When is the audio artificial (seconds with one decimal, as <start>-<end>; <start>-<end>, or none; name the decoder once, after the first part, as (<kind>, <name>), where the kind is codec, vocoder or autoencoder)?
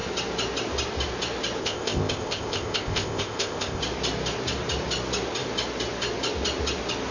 1.6-3.8 (codec, ZipCodec)